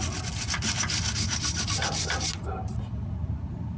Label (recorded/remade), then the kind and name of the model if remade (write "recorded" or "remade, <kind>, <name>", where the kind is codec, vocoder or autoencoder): recorded